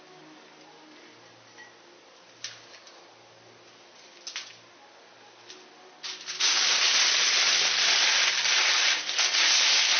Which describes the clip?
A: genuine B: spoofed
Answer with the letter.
A